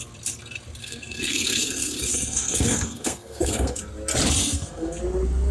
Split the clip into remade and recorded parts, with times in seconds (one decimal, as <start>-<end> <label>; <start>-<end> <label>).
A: 0.0-0.8 recorded; 0.8-3.8 remade; 3.8-4.4 recorded; 4.4-5.0 remade; 5.0-5.5 recorded